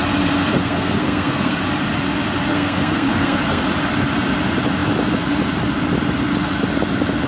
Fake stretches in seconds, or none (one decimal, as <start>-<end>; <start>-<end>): 0.6-1.6; 2.5-3.6